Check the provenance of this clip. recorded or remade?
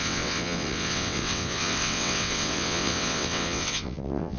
remade